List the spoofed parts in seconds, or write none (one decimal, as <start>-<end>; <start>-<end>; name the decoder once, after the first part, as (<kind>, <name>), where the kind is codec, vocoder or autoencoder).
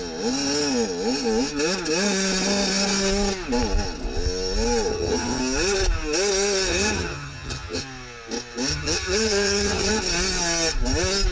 4.9-5.4 (vocoder, HiFi-GAN); 6.7-7.8; 8.7-10.0